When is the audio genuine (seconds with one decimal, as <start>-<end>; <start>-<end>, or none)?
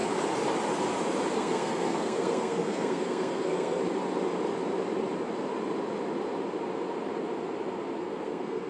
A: 0.0-1.3; 3.8-8.0